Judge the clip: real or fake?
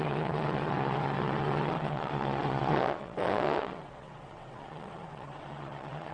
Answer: fake